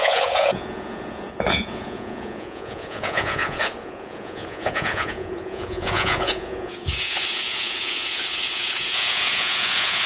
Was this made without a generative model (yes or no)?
no